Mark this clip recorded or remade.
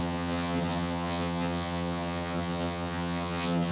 remade